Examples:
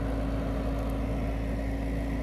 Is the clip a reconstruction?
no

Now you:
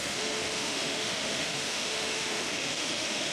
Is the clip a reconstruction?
yes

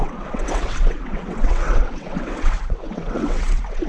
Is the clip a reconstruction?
yes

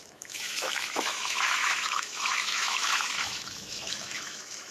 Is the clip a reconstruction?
yes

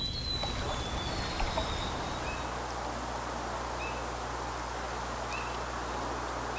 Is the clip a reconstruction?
no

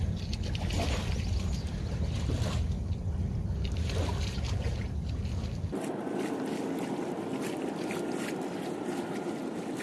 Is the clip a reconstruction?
no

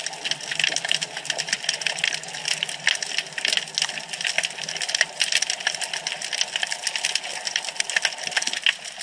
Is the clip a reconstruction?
no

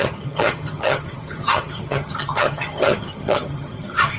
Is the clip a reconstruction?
yes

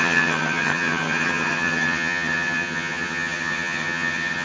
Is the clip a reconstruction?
yes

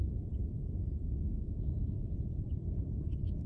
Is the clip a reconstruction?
yes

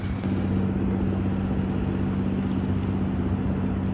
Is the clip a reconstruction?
no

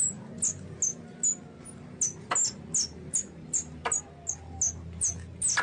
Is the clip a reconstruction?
no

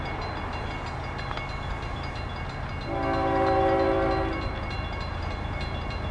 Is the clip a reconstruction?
no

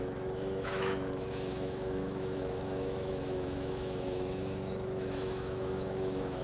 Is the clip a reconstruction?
yes